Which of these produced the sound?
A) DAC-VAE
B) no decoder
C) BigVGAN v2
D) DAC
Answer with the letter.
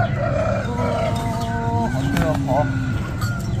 B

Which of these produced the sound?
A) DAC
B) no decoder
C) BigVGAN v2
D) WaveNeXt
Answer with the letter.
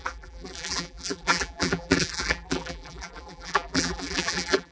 C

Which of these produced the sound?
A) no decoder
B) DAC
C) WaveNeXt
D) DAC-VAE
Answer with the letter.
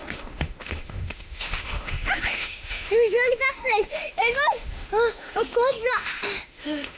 D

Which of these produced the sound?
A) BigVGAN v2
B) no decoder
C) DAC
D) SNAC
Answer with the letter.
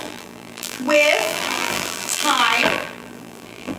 A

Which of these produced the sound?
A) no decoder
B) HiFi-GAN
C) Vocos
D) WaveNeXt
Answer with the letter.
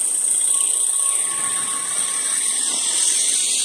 A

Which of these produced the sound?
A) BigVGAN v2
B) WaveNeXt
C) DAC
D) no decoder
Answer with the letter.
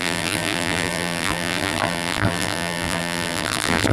A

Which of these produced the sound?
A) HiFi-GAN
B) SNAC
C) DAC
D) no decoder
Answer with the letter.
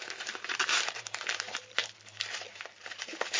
D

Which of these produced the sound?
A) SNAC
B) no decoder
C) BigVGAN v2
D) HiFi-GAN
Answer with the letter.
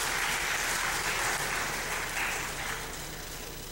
B